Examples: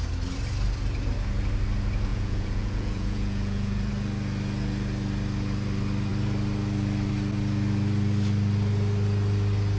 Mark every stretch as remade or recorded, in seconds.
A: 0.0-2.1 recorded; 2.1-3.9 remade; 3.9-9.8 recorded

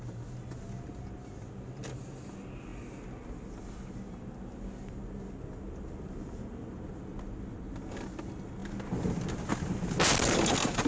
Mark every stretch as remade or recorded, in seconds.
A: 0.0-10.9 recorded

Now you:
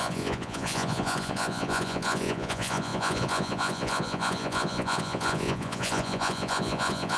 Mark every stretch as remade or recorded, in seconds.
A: 0.0-7.2 remade

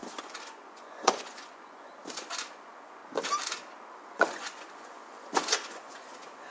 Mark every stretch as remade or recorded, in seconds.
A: 0.0-3.0 remade; 3.0-4.1 recorded; 4.1-6.5 remade

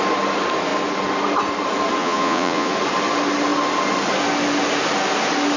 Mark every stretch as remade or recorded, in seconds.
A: 0.0-2.0 recorded; 2.0-2.7 remade; 2.7-5.6 recorded